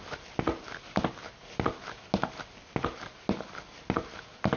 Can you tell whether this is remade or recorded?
recorded